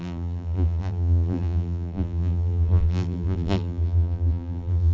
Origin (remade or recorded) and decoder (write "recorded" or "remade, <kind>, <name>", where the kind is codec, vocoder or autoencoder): remade, vocoder, BigVGAN v2